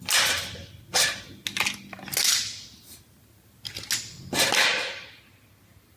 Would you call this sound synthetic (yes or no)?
no